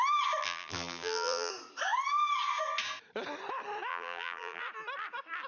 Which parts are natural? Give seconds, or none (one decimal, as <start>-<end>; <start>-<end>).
0.0-0.4; 1.5-3.9; 4.6-5.5